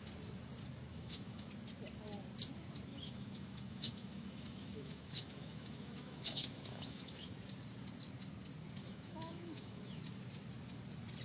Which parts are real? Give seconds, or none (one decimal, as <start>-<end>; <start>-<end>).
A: 0.0-0.9; 1.5-2.9; 7.3-8.8; 10.0-11.2

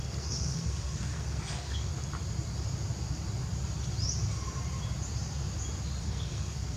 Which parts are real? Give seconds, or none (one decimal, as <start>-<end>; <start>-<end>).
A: 1.9-6.0

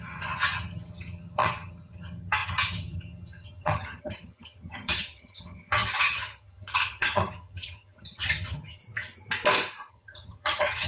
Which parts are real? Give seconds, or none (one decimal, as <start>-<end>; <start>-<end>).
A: 8.8-9.9

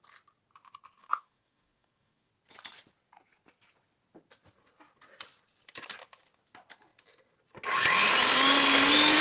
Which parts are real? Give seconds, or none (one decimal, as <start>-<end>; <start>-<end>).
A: 0.0-1.0; 2.3-9.2

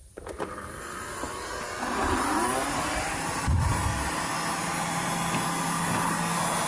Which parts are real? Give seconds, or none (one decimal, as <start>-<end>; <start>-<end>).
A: 3.0-6.7

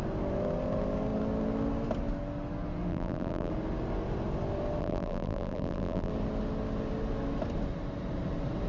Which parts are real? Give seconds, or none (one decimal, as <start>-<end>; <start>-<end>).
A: 0.0-2.9; 3.5-4.8; 6.1-8.7

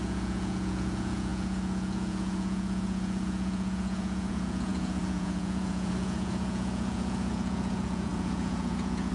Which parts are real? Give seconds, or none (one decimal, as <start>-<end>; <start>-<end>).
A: none

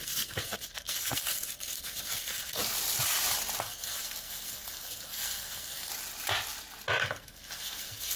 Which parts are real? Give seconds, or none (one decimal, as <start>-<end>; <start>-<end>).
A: 2.6-3.6; 5.9-7.0